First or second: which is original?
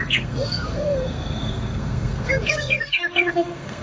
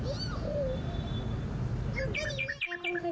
second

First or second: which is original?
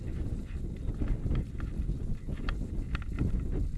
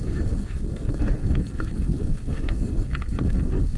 first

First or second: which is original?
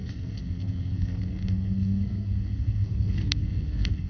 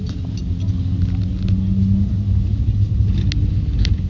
second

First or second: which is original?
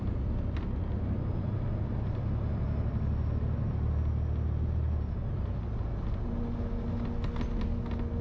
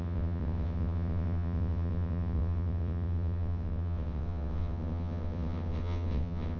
first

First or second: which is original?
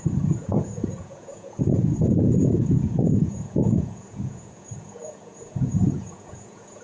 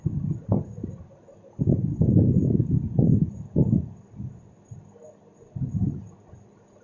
second